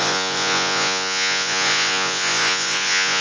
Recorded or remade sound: remade